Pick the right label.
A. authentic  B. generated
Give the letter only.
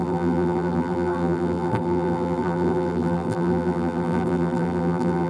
B